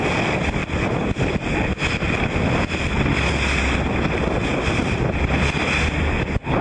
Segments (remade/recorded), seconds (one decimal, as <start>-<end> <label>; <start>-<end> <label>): 0.0-0.6 recorded; 0.6-2.9 remade; 2.9-4.8 recorded; 4.8-5.6 remade; 5.6-6.6 recorded